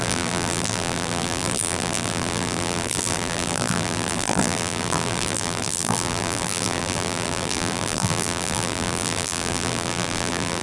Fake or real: fake